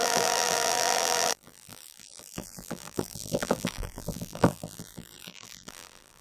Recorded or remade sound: remade